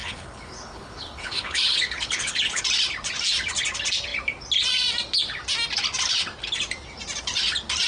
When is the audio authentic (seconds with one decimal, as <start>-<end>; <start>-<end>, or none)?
2.6-7.9